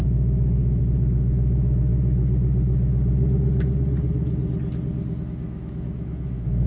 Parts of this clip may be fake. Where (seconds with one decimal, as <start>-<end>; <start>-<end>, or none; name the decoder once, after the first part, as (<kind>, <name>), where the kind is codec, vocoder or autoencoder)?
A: 0.0-1.9 (autoencoder, DAC-VAE); 5.2-6.7